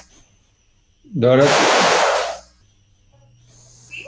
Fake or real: real